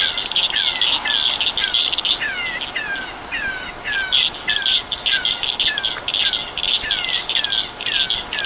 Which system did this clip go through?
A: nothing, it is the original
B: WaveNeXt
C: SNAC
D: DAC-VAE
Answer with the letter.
A